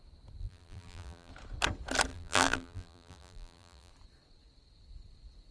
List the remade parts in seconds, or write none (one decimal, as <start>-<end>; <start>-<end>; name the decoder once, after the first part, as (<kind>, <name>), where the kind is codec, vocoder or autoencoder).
0.4-1.3 (vocoder, BigVGAN v2); 2.1-3.9